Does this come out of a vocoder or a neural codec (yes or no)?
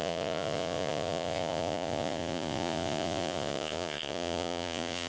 yes